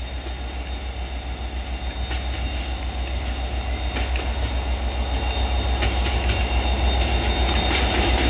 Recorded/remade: recorded